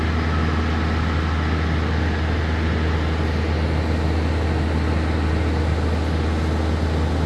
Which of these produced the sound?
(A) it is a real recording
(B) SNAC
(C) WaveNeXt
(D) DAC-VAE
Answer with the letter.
A